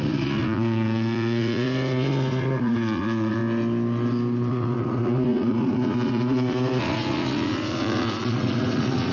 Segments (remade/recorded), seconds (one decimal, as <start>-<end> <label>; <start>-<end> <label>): 0.0-3.4 remade; 3.4-4.5 recorded; 4.5-9.1 remade